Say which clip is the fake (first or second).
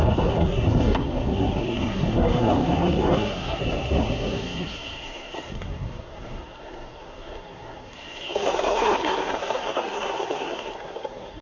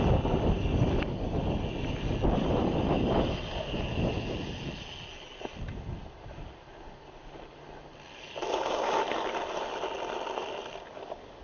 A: first